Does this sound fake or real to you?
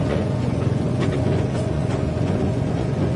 fake